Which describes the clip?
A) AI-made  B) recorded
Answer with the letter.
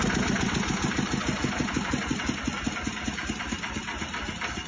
B